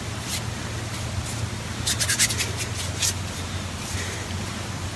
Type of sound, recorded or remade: recorded